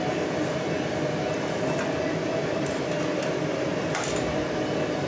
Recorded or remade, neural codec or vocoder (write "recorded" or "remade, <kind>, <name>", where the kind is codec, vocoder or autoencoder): recorded